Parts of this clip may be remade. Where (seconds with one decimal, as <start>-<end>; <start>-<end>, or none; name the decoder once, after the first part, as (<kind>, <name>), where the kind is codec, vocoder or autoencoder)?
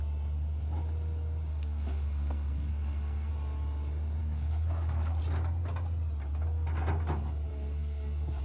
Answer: 1.5-3.3 (codec, SNAC); 4.2-5.2; 7.5-8.4